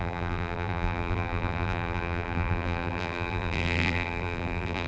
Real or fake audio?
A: fake